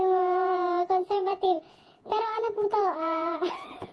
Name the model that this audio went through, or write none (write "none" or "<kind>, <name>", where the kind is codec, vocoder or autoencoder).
vocoder, Vocos